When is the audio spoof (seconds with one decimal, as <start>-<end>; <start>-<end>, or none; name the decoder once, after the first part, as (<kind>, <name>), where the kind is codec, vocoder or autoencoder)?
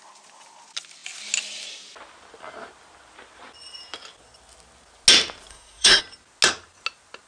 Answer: 5.5-6.0 (codec, SNAC)